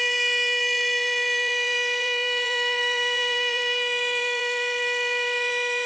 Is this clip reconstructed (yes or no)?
yes